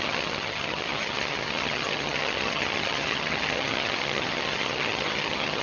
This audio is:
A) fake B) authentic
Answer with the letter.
A